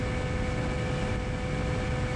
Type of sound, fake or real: real